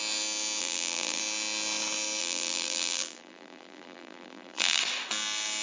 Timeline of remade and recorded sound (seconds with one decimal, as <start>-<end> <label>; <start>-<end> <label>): 0.0-0.6 recorded; 0.6-1.2 remade; 1.2-2.2 recorded; 2.2-4.8 remade; 4.8-5.6 recorded